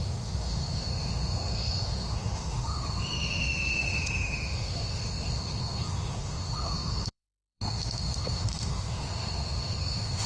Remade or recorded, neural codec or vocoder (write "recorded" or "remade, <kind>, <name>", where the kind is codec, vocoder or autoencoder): remade, autoencoder, DAC-VAE